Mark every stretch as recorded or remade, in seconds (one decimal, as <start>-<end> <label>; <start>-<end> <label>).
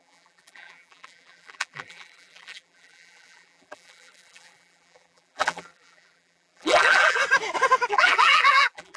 0.0-7.2 remade; 7.2-7.9 recorded; 7.9-9.0 remade